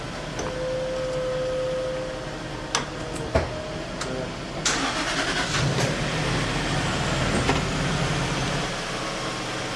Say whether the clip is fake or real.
real